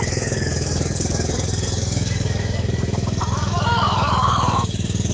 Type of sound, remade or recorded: remade